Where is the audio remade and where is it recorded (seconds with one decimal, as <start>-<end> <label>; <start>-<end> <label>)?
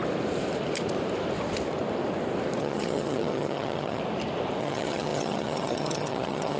0.0-2.6 recorded; 2.6-4.0 remade; 4.0-4.6 recorded; 4.6-6.6 remade